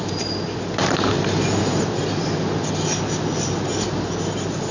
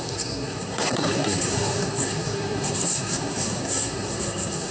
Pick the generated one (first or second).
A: second